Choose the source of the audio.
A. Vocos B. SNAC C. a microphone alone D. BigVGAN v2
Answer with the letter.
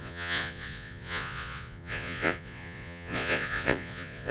A